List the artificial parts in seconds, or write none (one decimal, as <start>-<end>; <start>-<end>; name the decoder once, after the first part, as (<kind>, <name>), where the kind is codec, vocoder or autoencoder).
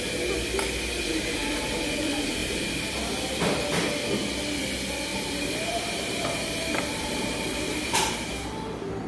2.4-3.7 (vocoder, BigVGAN v2); 5.1-8.1